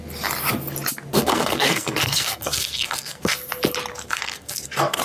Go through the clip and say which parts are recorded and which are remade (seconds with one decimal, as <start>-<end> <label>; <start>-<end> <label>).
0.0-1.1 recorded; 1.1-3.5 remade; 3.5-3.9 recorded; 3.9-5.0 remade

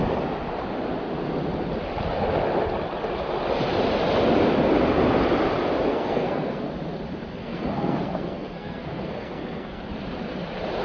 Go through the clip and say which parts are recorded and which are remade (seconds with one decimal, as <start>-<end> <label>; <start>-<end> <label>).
0.0-5.9 recorded; 5.9-6.7 remade; 6.7-7.4 recorded; 7.4-9.8 remade; 9.8-10.8 recorded

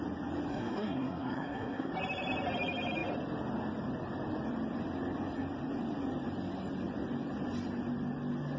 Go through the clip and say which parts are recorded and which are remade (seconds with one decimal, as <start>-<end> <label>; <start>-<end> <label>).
0.0-0.5 recorded; 0.5-1.9 remade; 1.9-8.6 recorded

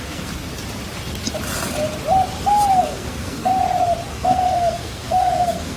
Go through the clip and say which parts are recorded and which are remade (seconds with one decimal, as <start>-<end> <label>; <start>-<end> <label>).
0.0-0.5 remade; 0.5-2.7 recorded; 2.7-3.5 remade; 3.5-4.1 recorded; 4.1-5.8 remade

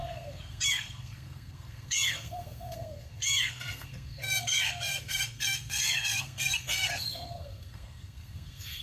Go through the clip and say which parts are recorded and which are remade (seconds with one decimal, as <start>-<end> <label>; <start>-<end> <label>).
0.0-8.8 remade

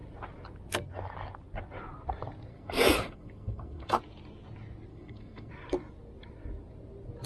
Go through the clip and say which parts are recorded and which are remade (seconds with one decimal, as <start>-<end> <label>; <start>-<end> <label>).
0.0-2.5 recorded; 2.5-4.0 remade; 4.0-4.9 recorded; 4.9-5.5 remade; 5.5-7.3 recorded

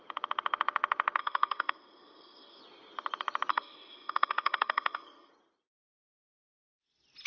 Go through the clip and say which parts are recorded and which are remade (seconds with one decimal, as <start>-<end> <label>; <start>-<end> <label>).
0.0-1.2 recorded; 1.2-2.6 remade; 2.6-3.5 recorded; 3.5-5.3 remade; 5.3-7.3 recorded

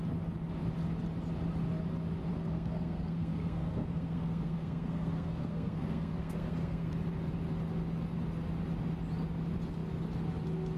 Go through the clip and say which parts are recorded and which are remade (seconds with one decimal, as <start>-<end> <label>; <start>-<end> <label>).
0.0-2.3 recorded; 2.3-6.9 remade; 6.9-10.8 recorded